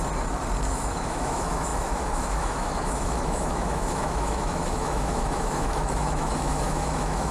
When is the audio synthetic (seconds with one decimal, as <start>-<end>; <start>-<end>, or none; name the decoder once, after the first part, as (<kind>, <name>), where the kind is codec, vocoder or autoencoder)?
0.7-7.3 (autoencoder, DAC-VAE)